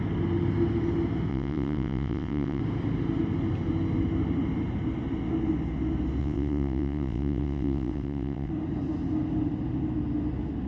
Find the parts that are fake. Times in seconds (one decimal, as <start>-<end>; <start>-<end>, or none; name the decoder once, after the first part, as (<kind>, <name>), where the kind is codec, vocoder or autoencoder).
1.3-2.6 (vocoder, WaveNeXt); 6.2-8.5